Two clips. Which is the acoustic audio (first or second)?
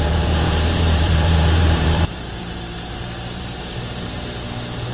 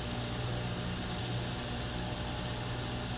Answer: second